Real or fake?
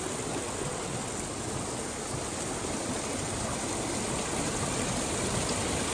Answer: real